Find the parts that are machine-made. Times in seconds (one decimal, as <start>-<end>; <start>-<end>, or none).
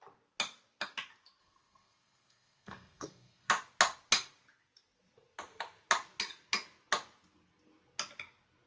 1.4-3.5